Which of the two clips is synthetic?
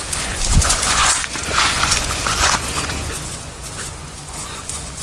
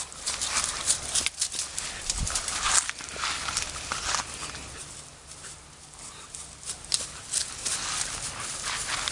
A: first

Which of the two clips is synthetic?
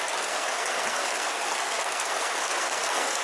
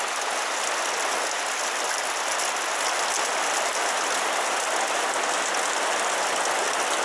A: first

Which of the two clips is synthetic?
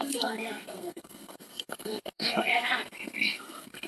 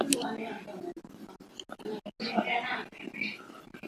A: first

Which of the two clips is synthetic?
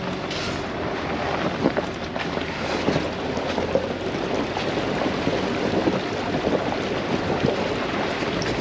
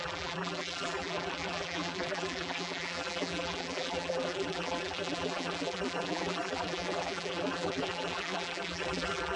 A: second